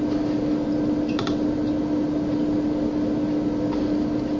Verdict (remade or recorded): recorded